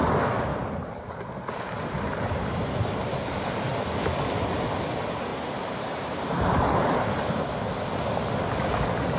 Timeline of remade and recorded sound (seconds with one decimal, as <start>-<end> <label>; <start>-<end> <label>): 0.0-0.5 recorded; 0.5-1.3 remade; 1.3-5.3 recorded; 5.3-7.4 remade; 7.4-9.2 recorded